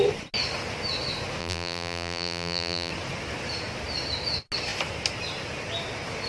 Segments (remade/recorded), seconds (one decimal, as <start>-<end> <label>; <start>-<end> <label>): 0.0-1.4 recorded; 1.4-2.9 remade; 2.9-6.3 recorded